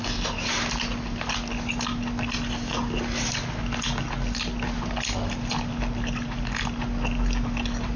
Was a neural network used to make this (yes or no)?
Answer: no